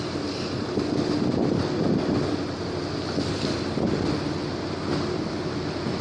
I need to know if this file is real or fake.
real